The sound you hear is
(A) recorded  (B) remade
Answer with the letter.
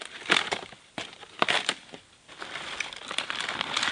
B